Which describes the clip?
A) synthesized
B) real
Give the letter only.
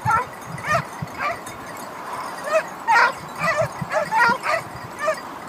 A